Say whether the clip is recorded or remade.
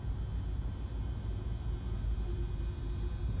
recorded